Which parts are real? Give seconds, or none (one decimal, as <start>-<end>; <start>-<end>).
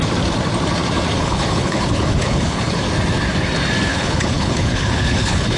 0.0-1.2; 2.8-3.9